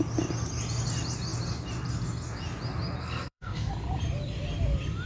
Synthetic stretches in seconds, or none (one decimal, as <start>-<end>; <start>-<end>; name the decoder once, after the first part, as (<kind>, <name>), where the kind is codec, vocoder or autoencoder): 3.0-3.7 (codec, SNAC)

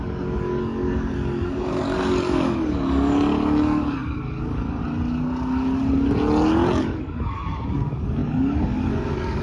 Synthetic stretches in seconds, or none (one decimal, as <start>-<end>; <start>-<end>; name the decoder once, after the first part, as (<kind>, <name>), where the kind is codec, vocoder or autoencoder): 0.0-4.8 (codec, DAC); 6.7-9.4

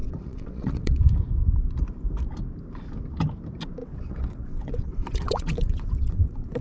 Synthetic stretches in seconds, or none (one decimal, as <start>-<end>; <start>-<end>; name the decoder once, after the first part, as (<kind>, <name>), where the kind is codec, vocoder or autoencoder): 0.0-1.0 (vocoder, WaveNeXt); 3.8-6.6

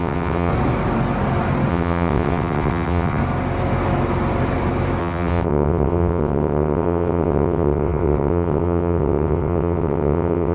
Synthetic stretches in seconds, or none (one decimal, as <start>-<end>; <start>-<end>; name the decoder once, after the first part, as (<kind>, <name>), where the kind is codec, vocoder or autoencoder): 0.0-0.5 (vocoder, WaveNeXt); 1.7-3.2; 5.0-10.5